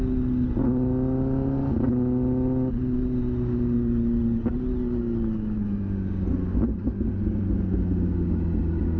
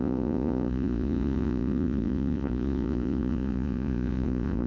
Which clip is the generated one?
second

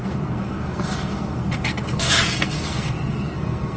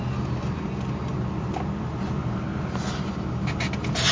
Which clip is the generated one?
first